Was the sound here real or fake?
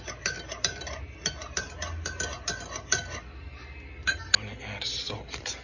real